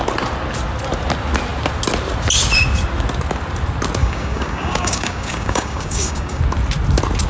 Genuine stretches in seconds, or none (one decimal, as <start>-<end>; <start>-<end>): 0.0-4.0; 6.4-7.3